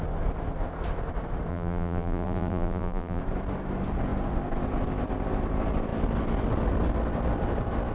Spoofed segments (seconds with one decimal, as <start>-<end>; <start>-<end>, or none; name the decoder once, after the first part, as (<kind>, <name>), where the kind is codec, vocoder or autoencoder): 1.5-3.2 (vocoder, BigVGAN v2)